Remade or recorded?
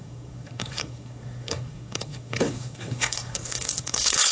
remade